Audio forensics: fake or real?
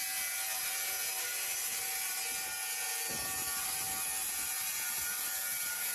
real